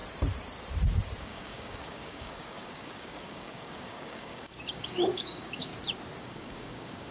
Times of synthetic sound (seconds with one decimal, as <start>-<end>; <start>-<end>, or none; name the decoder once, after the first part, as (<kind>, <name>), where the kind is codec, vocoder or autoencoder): 1.2-5.7 (codec, DAC); 6.2-7.1